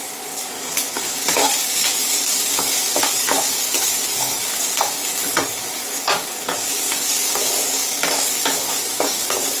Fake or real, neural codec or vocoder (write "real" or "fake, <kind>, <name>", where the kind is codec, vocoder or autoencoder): fake, codec, DAC